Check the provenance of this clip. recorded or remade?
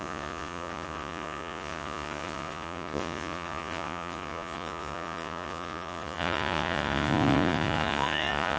remade